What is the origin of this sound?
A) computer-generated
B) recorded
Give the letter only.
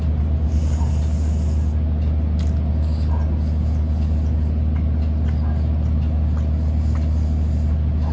B